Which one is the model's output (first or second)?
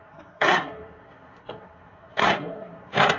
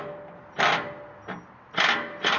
first